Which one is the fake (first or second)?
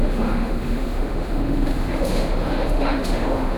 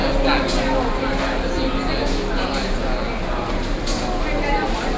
first